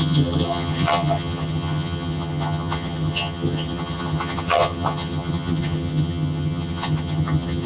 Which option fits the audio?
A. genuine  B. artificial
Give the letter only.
B